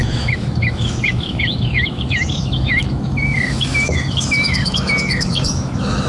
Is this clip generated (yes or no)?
yes